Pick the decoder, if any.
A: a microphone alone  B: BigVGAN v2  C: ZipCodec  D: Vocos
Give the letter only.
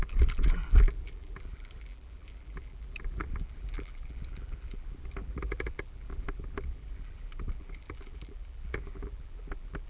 B